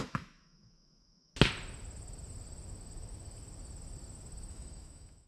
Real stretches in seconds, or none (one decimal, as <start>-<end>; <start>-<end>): 1.3-4.5